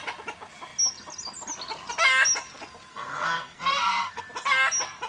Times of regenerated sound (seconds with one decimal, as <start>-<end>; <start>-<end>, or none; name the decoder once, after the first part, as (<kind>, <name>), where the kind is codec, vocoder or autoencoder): 2.9-4.2 (codec, SNAC)